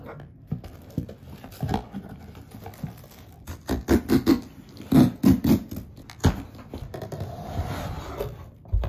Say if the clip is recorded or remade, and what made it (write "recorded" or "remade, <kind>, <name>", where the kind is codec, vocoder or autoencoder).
recorded